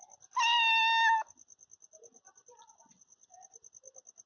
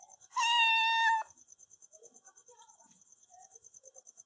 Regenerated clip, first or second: second